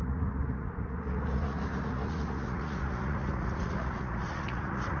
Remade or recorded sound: remade